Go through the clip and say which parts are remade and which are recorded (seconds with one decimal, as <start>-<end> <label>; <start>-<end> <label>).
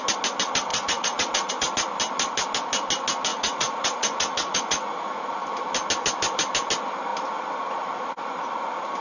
0.0-0.7 recorded; 0.7-1.5 remade; 1.5-3.3 recorded; 3.3-5.1 remade; 5.1-9.0 recorded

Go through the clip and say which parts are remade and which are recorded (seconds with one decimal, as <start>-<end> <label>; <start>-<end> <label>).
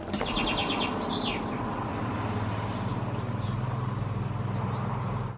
0.0-5.4 recorded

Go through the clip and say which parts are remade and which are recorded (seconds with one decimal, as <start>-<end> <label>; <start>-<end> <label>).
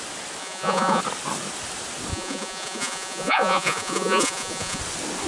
0.0-0.4 recorded; 0.4-1.0 remade; 1.0-2.1 recorded; 2.1-4.8 remade; 4.8-5.3 recorded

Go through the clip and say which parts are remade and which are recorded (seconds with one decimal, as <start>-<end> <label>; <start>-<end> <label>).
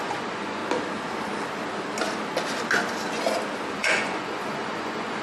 0.0-0.6 remade; 0.6-3.7 recorded; 3.7-5.2 remade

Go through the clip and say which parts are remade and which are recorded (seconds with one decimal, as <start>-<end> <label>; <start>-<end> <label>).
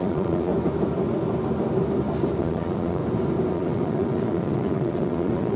0.0-0.5 remade; 0.5-2.4 recorded; 2.4-3.0 remade; 3.0-3.5 recorded; 3.5-5.6 remade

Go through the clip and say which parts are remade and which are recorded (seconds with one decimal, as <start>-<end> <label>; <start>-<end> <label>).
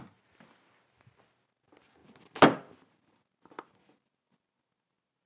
0.0-5.3 recorded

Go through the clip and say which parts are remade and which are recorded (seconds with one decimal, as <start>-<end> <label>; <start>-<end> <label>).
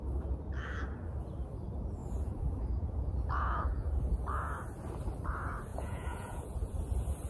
0.0-2.0 recorded; 2.0-4.0 remade; 4.0-5.7 recorded; 5.7-6.7 remade; 6.7-7.3 recorded